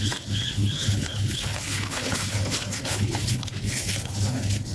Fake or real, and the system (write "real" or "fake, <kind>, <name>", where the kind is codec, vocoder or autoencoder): fake, codec, HILCodec